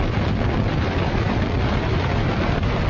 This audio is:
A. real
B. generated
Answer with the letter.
B